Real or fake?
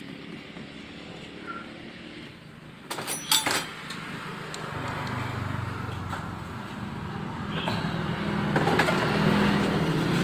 real